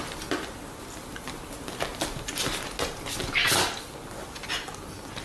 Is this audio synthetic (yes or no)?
no